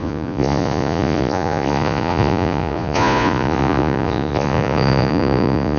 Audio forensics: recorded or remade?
remade